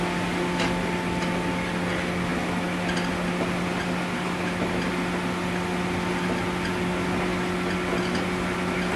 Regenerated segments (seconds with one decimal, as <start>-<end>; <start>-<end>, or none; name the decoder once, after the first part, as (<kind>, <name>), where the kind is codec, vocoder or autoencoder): none